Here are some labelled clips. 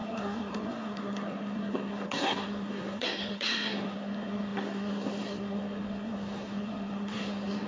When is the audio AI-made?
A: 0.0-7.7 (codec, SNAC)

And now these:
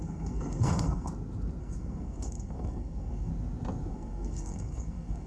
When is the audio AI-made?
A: 0.0-1.1 (codec, SNAC); 1.6-3.3; 3.9-5.3